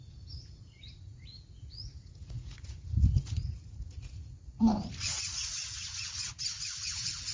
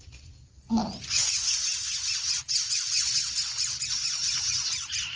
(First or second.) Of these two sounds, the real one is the second